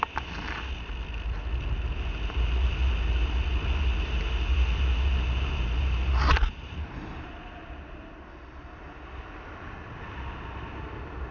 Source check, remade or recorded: recorded